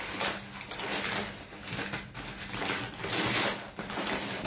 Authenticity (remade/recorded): recorded